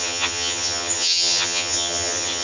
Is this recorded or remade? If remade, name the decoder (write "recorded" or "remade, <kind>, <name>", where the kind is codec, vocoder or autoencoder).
remade, vocoder, HiFi-GAN